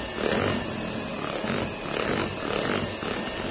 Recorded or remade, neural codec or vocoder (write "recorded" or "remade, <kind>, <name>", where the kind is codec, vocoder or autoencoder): recorded